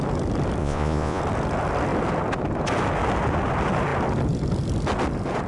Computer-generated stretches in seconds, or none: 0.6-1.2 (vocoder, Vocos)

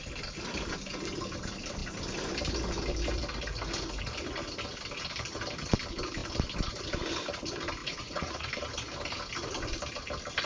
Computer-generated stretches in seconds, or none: 7.8-8.5 (vocoder, Vocos)